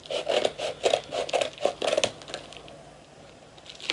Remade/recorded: recorded